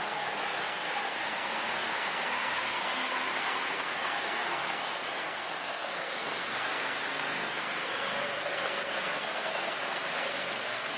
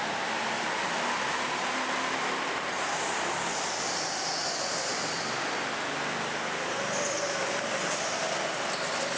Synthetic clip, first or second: first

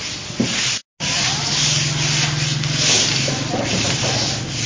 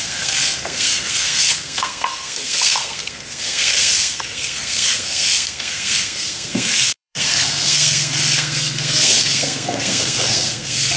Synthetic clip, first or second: second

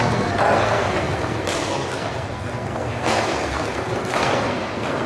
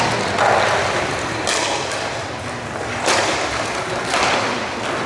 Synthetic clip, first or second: first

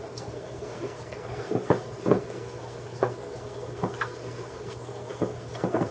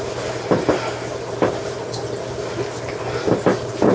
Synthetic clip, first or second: first